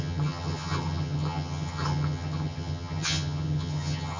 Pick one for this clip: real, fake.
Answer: fake